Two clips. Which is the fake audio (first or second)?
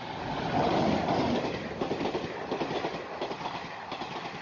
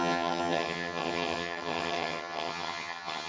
second